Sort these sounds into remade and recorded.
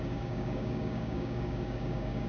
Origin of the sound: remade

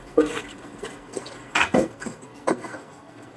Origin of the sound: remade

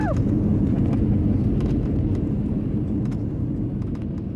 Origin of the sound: recorded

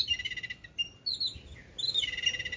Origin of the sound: recorded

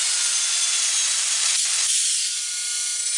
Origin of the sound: recorded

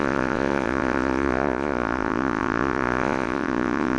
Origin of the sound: remade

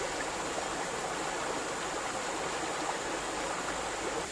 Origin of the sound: recorded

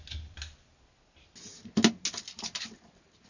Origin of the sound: recorded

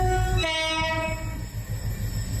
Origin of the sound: recorded